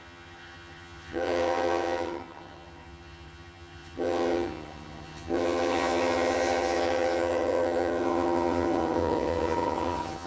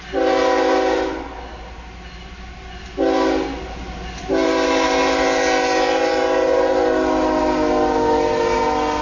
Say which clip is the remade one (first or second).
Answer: first